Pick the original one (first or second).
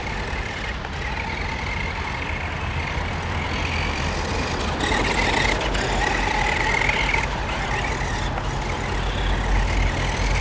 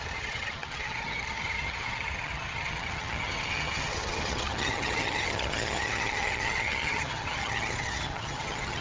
first